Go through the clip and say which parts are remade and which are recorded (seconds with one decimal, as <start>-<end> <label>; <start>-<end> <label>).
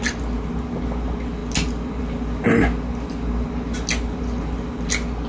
0.0-5.3 recorded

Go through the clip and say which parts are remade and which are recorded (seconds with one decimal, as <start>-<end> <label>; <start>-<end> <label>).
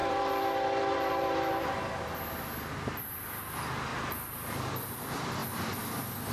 0.0-1.5 remade; 1.5-3.9 recorded; 3.9-4.7 remade; 4.7-6.3 recorded